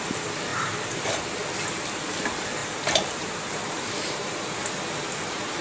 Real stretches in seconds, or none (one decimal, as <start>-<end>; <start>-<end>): 0.0-0.5; 1.2-2.6; 4.6-5.6